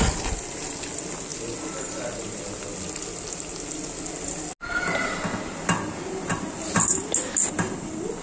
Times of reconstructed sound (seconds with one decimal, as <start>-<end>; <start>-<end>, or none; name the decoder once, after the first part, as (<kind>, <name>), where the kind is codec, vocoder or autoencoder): none